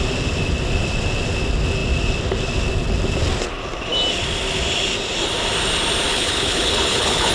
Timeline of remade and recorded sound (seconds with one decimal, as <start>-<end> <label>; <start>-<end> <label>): 0.0-6.1 recorded; 6.1-7.3 remade